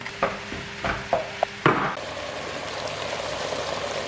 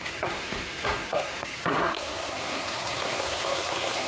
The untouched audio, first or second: first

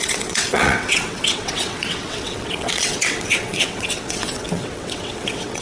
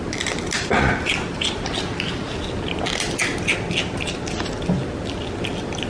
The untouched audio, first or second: second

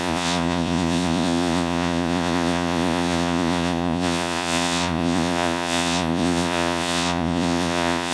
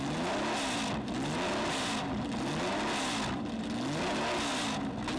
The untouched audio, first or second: second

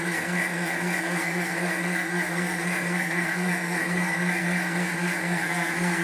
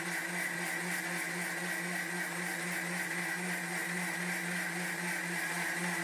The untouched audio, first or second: second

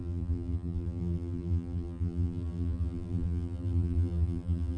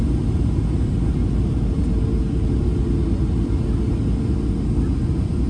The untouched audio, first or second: second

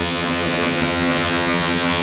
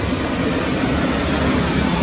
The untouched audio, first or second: second